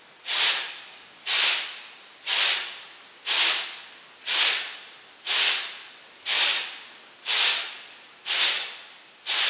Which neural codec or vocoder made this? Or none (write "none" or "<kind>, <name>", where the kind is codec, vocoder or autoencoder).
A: none